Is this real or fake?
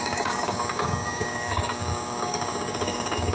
fake